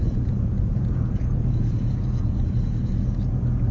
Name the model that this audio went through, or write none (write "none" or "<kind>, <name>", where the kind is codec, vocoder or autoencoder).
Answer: vocoder, Vocos